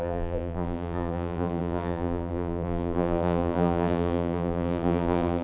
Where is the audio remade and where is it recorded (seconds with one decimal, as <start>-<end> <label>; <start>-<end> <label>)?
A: 0.0-5.4 remade